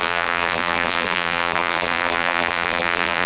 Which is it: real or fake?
fake